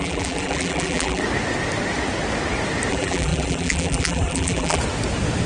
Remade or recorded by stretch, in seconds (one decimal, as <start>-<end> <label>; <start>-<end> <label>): 0.0-1.2 remade; 1.2-2.9 recorded; 2.9-4.8 remade; 4.8-5.5 recorded